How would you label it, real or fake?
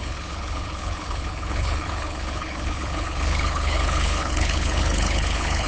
fake